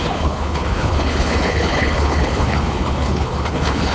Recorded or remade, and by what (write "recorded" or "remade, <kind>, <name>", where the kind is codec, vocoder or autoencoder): remade, codec, HILCodec